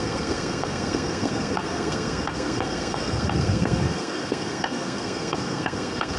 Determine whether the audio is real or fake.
fake